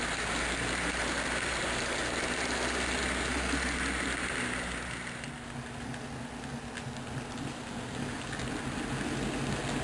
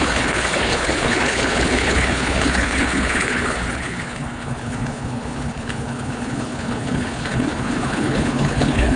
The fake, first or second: second